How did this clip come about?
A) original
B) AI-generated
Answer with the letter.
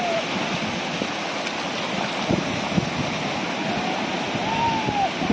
A